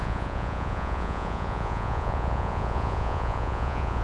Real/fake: fake